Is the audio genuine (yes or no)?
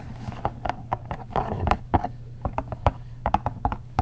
no